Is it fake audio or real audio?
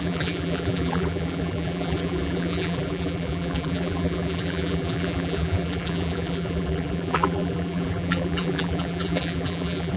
fake